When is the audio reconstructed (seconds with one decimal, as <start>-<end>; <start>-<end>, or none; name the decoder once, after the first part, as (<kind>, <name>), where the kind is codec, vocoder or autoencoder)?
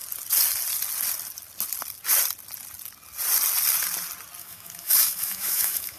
4.4-6.0 (autoencoder, DAC-VAE)